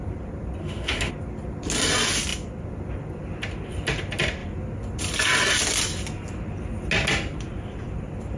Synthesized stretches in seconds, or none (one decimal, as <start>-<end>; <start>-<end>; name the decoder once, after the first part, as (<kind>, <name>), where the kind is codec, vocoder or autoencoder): 0.6-1.1 (autoencoder, DAC-VAE)